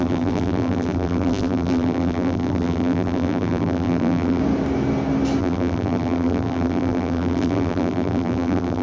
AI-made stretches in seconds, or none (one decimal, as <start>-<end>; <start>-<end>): 0.0-4.4; 5.4-8.8